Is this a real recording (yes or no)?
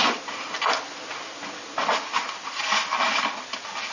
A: yes